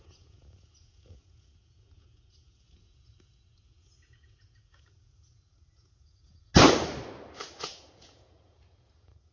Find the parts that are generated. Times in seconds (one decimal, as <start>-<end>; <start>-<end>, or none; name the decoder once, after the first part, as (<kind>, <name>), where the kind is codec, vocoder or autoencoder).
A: 0.0-6.5 (vocoder, Vocos); 7.6-9.3